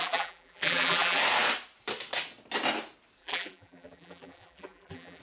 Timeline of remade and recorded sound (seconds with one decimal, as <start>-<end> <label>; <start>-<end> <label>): 0.0-1.2 remade; 1.2-3.2 recorded; 3.2-5.2 remade